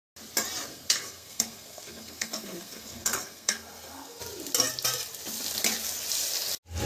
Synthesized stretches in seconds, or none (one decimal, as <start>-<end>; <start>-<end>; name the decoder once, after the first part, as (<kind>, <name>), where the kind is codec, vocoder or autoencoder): 0.7-4.2 (codec, SNAC)